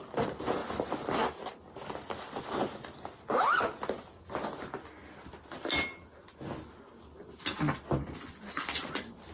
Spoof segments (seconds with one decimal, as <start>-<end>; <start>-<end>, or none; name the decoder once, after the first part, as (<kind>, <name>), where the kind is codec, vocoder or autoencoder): none